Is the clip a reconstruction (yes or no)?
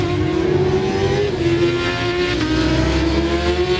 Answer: no